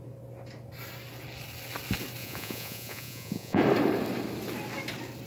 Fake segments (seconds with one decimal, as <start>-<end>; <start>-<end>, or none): 2.2-3.6